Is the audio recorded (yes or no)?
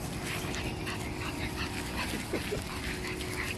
yes